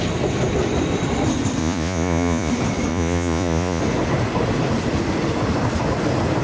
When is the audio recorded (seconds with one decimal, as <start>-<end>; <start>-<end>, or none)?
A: 0.0-1.6; 2.5-2.9; 3.8-6.4